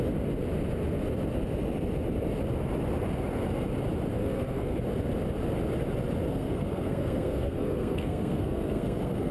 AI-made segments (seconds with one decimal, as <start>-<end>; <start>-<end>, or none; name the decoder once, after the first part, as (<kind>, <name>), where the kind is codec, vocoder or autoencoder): 4.1-4.8 (codec, SNAC); 6.3-9.3

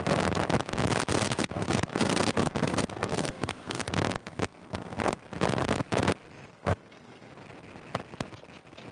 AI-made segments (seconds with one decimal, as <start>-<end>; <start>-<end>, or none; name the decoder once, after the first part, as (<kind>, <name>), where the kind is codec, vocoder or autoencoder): 1.0-5.2 (codec, SNAC); 6.5-7.3

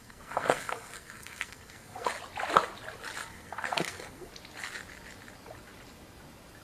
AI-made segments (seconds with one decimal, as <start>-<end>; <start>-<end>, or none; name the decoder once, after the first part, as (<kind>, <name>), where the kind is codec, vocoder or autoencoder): 0.0-2.1 (codec, SNAC); 3.3-4.3

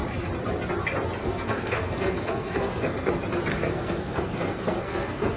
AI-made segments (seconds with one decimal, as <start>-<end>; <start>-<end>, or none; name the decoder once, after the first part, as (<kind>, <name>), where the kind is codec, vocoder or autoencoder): 1.2-3.1 (codec, SNAC); 3.5-5.4

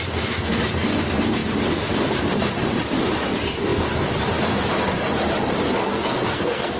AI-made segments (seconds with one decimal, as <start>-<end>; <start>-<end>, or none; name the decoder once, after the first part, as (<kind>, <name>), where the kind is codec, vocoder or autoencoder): 5.8-6.8 (codec, SNAC)

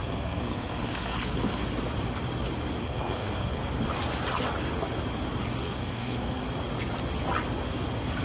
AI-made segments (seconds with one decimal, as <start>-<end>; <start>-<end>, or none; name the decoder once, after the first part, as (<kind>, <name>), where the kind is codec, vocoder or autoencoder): 0.0-1.6 (codec, SNAC); 2.8-3.6; 5.6-6.4

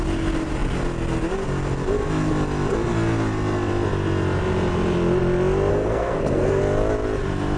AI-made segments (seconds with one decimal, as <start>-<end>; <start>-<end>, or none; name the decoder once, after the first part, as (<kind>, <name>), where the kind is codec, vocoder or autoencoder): 5.7-6.6 (codec, SNAC)

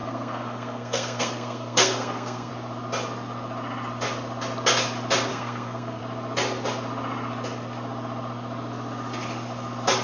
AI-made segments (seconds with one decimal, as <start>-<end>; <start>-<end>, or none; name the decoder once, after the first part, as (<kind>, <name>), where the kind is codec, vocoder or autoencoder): 0.0-2.5 (codec, SNAC); 5.3-6.0